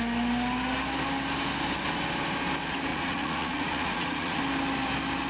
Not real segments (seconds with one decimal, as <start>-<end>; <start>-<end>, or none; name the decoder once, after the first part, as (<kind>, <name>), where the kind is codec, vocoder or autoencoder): 2.9-4.4 (vocoder, Vocos)